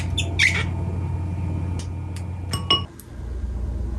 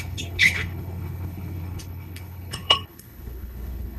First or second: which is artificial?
second